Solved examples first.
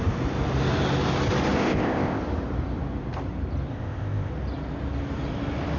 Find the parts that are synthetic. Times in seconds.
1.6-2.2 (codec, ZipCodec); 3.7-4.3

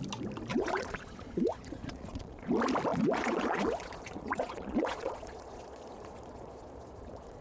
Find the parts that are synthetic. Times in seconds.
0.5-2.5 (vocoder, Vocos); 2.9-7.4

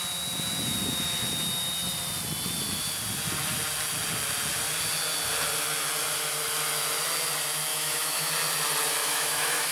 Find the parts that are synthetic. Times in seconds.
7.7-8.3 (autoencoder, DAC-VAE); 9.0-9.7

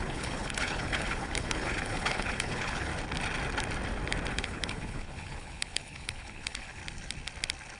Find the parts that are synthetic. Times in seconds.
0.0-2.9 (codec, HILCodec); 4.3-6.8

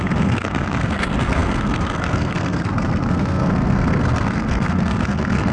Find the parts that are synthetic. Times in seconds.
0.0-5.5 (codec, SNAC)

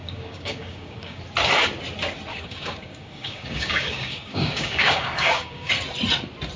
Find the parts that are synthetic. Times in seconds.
0.0-1.2 (codec, DAC); 2.3-5.7

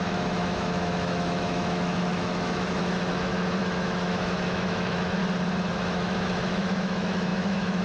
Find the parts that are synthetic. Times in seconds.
0.0-5.2 (autoencoder, DAC-VAE); 5.7-7.8

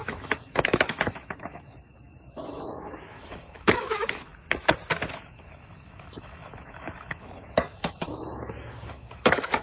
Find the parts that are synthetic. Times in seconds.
0.0-4.3 (autoencoder, DAC-VAE); 5.1-9.6